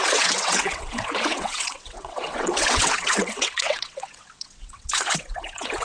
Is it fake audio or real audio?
fake